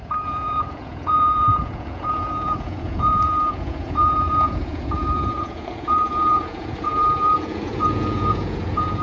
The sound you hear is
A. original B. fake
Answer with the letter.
B